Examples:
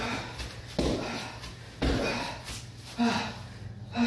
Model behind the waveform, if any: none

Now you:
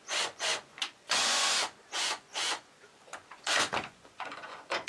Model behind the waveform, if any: vocoder, Vocos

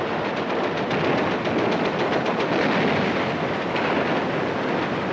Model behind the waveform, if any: none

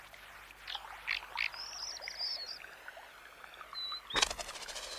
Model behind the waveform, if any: none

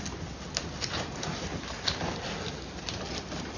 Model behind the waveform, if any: none